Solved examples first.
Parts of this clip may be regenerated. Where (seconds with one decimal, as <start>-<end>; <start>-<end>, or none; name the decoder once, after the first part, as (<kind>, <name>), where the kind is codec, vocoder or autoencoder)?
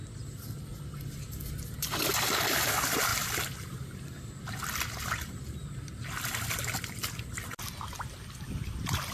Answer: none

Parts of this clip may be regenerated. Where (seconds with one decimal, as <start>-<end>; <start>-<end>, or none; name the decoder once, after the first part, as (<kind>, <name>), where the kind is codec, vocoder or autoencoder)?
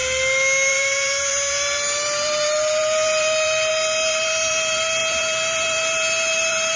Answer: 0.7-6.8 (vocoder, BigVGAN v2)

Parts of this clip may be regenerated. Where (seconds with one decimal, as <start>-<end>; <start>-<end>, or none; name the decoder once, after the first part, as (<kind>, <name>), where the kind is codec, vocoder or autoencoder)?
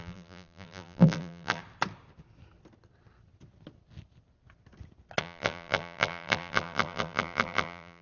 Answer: 0.0-1.6 (vocoder, BigVGAN v2); 5.2-8.0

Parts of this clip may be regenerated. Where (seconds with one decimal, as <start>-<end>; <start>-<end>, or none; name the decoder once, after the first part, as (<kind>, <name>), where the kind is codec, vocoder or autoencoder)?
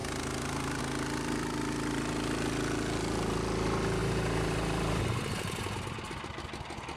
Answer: 0.0-0.8 (vocoder, BigVGAN v2); 4.0-5.6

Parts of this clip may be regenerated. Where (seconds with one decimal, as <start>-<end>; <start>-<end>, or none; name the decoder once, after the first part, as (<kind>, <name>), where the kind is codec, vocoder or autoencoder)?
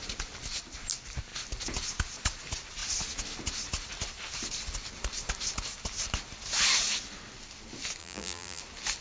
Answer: 8.0-8.6 (vocoder, BigVGAN v2)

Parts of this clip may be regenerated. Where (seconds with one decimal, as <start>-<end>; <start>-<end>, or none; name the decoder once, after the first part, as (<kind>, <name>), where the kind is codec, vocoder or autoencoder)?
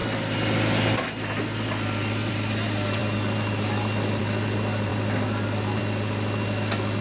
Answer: none